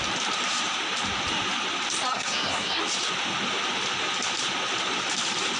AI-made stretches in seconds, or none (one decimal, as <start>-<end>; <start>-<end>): 2.1-2.8